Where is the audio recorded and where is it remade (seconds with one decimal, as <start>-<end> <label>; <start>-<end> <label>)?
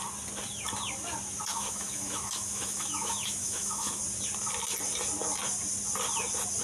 0.0-1.5 recorded; 1.5-4.0 remade; 4.0-6.6 recorded